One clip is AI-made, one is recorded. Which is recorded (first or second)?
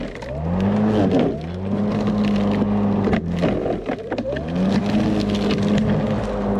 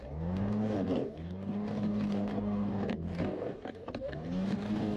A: first